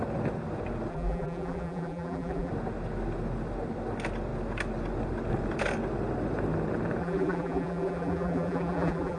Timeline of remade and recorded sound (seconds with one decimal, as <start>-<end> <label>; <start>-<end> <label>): 0.0-0.9 recorded; 0.9-2.5 remade; 2.5-7.0 recorded; 7.0-9.2 remade